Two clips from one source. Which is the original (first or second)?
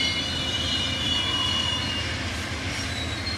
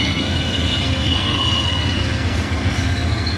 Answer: first